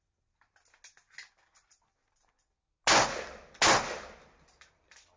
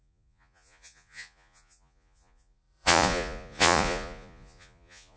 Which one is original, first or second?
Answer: first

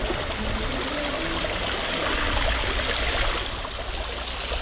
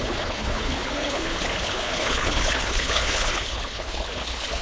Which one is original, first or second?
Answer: first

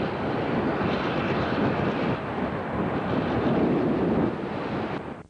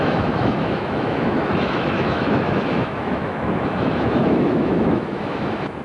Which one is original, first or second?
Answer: first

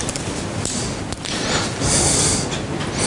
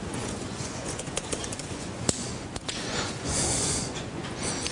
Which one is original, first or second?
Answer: first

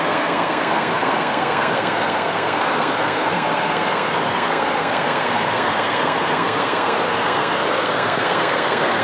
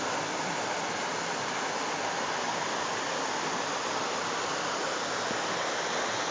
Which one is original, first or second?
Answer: second